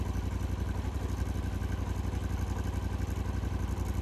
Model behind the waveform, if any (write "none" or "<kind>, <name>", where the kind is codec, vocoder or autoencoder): none